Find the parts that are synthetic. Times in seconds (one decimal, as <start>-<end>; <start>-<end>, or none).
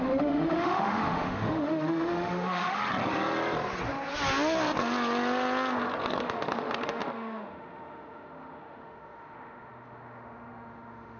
0.0-2.8; 6.2-11.2